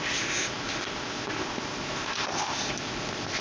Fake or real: fake